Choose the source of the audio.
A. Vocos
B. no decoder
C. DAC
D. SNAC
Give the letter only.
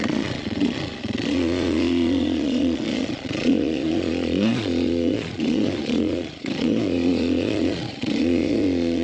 A